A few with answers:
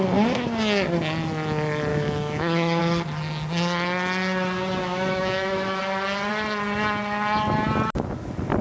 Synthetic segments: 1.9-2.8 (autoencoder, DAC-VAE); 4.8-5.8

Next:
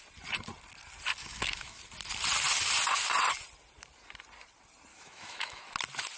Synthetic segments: 1.2-1.8 (autoencoder, DAC-VAE); 4.9-5.6

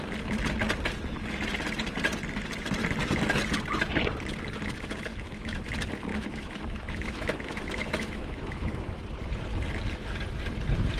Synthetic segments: 5.1-5.6 (autoencoder, DAC-VAE); 6.1-9.0

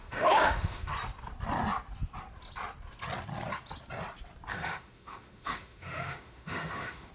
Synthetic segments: 0.0-0.9 (autoencoder, DAC-VAE); 4.5-7.1

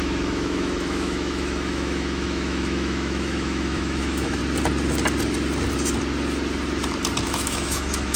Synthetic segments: 0.0-4.4 (autoencoder, DAC-VAE); 7.2-8.2

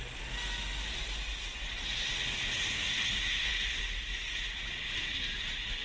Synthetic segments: none